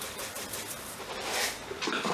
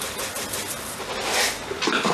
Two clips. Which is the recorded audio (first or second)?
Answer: second